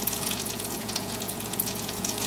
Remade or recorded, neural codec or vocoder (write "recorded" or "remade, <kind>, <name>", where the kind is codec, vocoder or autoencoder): remade, vocoder, Vocos